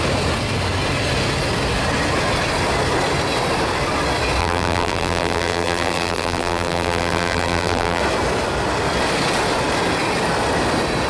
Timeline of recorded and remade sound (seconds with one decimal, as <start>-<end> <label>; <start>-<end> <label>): 0.0-4.4 recorded; 4.4-8.0 remade; 8.0-11.1 recorded